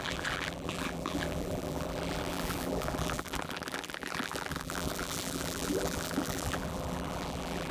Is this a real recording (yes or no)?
no